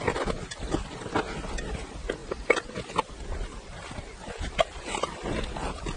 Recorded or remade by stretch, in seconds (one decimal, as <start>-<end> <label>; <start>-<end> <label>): 0.0-6.0 recorded